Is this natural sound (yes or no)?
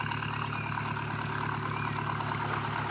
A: yes